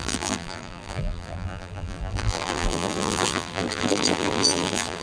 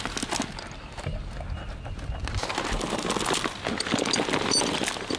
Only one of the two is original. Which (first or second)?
second